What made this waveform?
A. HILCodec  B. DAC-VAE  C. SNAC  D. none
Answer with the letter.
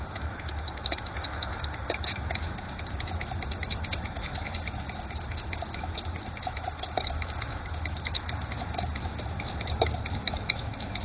B